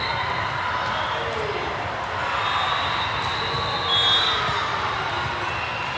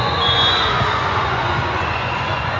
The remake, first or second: second